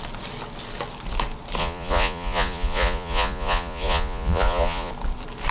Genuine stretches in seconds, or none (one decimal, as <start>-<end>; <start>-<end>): 0.0-1.6; 4.9-5.5